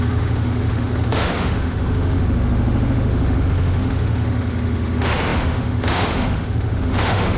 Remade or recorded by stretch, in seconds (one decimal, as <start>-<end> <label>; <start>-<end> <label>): 0.0-7.4 remade